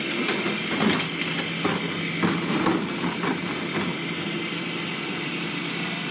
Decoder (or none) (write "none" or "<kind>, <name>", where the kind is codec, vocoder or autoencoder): none